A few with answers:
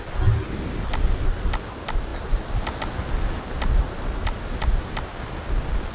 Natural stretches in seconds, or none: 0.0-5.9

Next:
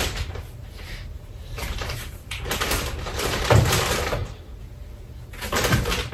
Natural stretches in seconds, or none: 3.7-6.1

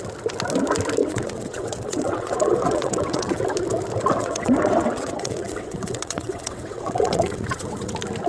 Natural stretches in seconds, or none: 0.0-1.0; 3.4-4.2; 7.9-8.3

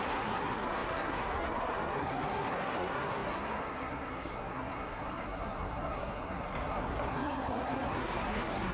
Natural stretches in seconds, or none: none

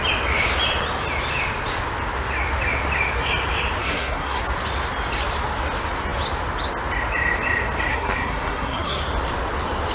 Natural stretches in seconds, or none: 0.0-3.8; 4.4-7.9; 9.0-9.9

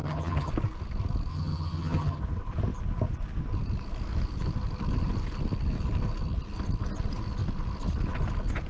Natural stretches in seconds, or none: 0.5-1.3; 2.2-8.7